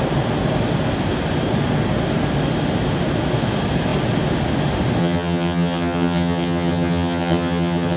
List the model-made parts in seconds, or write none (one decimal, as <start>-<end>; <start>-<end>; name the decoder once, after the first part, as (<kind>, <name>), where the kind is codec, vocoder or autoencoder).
5.0-8.0 (vocoder, HiFi-GAN)